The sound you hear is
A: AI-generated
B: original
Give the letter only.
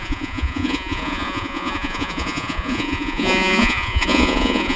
A